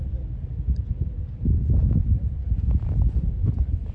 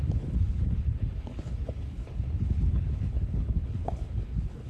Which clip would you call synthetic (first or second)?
second